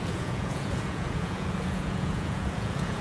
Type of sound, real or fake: fake